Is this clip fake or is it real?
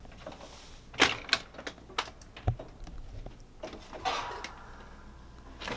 real